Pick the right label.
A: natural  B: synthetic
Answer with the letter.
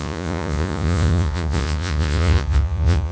B